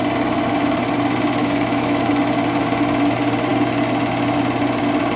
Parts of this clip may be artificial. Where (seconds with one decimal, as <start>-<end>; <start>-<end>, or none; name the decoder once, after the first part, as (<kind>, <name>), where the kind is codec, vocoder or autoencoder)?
1.4-2.1 (autoencoder, DAC-VAE)